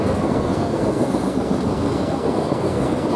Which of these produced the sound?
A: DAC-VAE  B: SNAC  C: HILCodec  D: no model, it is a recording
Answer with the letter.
B